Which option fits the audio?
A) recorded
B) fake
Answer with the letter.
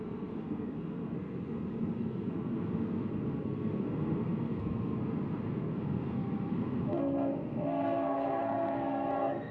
B